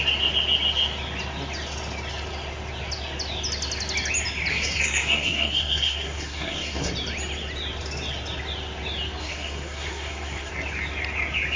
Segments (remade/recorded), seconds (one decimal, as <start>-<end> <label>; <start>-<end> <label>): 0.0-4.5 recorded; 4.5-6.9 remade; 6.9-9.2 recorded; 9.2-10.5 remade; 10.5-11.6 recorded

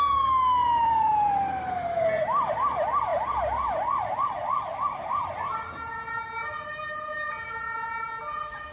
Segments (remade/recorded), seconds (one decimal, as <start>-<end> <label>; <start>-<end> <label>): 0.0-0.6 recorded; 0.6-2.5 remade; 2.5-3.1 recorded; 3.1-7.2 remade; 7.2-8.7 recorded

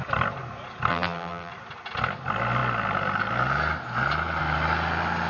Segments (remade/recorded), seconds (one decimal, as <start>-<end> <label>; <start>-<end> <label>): 0.0-0.9 recorded; 0.9-1.5 remade; 1.5-5.3 recorded

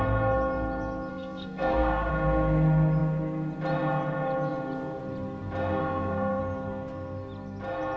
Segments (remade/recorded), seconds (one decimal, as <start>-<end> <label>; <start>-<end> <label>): 0.0-1.1 recorded; 1.1-2.1 remade; 2.1-5.8 recorded; 5.8-6.4 remade; 6.4-8.0 recorded

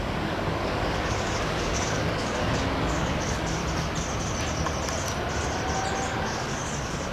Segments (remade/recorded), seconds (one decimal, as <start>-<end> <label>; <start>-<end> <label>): 0.0-3.6 remade; 3.6-6.2 recorded; 6.2-7.1 remade

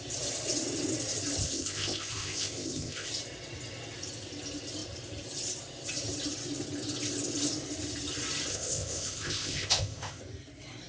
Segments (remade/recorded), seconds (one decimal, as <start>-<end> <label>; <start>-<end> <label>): 0.0-1.4 recorded; 1.4-3.1 remade; 3.1-8.5 recorded; 8.5-10.2 remade; 10.2-10.9 recorded